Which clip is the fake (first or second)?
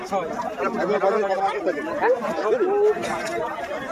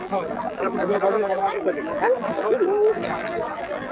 second